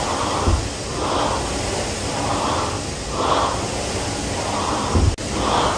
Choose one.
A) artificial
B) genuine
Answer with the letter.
B